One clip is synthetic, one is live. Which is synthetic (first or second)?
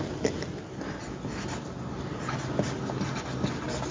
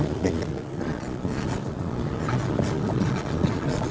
second